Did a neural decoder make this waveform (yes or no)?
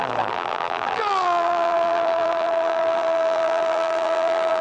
yes